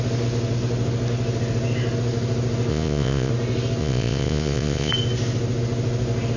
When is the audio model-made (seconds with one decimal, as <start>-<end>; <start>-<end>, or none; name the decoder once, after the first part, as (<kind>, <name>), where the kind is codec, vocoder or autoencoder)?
2.7-3.3 (vocoder, Vocos); 3.8-4.9